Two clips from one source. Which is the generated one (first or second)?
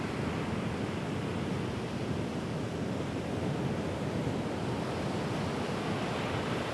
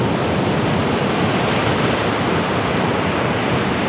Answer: second